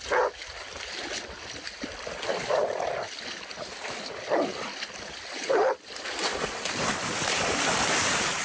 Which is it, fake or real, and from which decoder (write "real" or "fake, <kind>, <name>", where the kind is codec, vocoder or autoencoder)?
fake, vocoder, BigVGAN v2